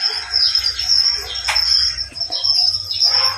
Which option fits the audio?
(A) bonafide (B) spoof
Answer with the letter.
B